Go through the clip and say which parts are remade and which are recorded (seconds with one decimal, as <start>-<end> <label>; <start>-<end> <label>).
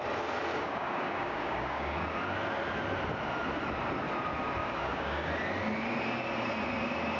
0.0-0.5 recorded; 0.5-2.1 remade; 2.1-4.6 recorded; 4.6-5.3 remade; 5.3-7.2 recorded